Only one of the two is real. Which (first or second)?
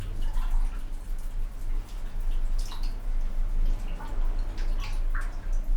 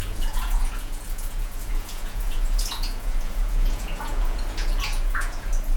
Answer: first